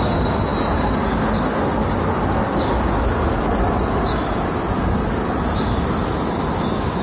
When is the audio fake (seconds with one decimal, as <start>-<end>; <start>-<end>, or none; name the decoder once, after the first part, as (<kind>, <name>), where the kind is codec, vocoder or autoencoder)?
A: none